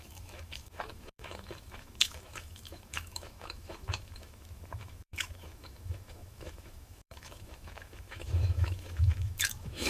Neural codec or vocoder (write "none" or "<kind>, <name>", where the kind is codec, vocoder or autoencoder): autoencoder, DAC-VAE